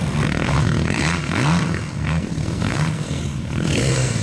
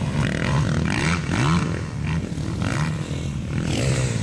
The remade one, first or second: first